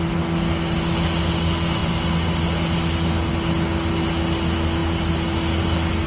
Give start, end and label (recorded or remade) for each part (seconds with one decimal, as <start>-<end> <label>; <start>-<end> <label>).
0.0-6.1 recorded

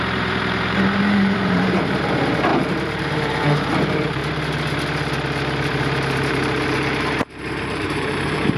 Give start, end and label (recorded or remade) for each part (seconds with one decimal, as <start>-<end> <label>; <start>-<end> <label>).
0.0-4.2 remade; 4.2-5.7 recorded; 5.7-8.6 remade

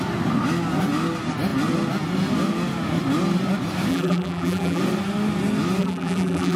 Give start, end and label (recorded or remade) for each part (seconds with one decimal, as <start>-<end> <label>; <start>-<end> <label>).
0.0-3.9 recorded; 3.9-4.8 remade; 4.8-5.8 recorded; 5.8-6.6 remade

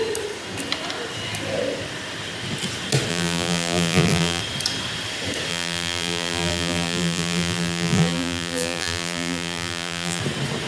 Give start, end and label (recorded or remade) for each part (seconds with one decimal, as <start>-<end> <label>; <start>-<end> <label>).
0.0-3.1 recorded; 3.1-4.4 remade; 4.4-5.5 recorded; 5.5-10.2 remade; 10.2-10.7 recorded

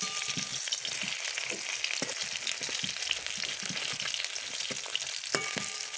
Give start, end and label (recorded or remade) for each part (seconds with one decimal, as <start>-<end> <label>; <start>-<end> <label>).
0.0-6.0 recorded

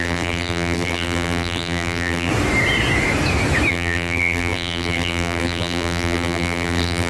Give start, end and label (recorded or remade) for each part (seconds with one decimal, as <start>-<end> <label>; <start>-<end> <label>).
0.0-2.3 remade; 2.3-3.7 recorded; 3.7-7.1 remade

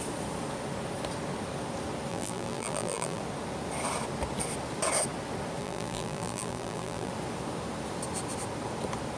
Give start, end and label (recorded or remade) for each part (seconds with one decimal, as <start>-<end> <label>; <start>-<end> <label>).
0.0-2.1 recorded; 2.1-3.2 remade; 3.2-5.6 recorded; 5.6-7.1 remade; 7.1-9.2 recorded

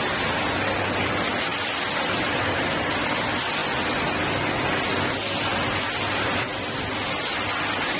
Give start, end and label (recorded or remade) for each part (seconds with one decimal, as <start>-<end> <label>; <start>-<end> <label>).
0.0-1.5 recorded; 1.5-3.1 remade; 3.1-8.0 recorded